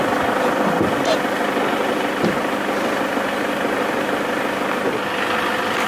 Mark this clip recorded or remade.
recorded